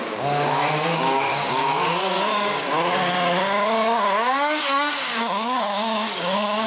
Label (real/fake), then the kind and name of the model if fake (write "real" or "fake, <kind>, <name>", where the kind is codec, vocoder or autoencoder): fake, codec, DAC